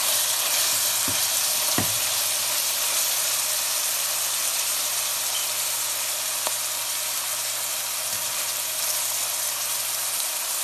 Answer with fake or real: real